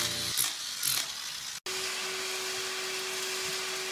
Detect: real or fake real